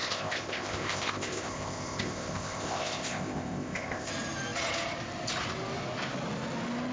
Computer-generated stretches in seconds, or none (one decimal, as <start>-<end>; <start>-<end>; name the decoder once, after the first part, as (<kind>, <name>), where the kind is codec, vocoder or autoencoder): 0.0-4.1 (codec, ZipCodec)